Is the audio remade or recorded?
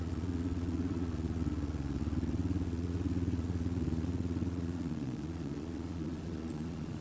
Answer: remade